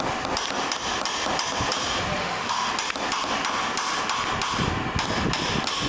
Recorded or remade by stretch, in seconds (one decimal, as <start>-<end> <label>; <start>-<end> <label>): 0.0-2.2 recorded; 2.2-2.7 remade; 2.7-5.9 recorded